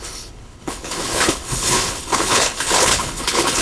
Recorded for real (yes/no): no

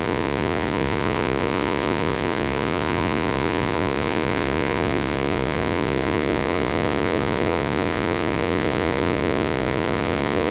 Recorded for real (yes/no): no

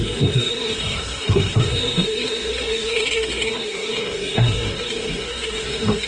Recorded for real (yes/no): no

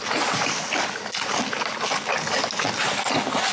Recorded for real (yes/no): yes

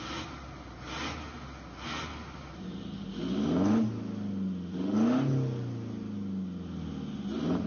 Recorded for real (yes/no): yes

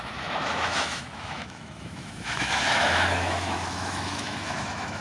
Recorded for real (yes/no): no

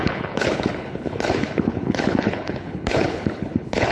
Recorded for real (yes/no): no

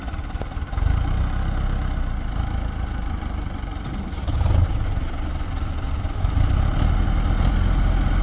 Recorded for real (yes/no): yes